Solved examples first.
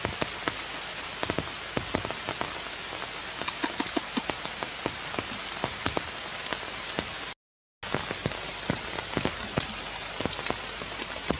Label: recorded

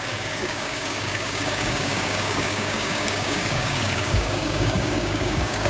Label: remade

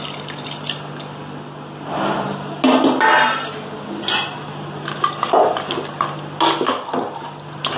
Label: recorded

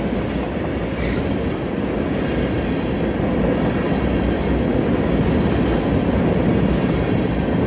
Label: recorded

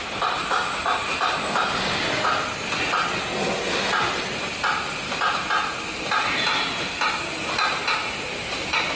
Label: recorded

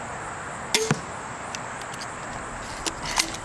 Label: recorded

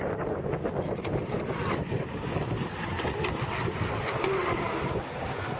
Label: recorded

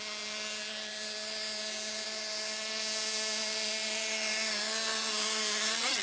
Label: recorded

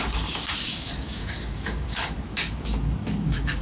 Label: remade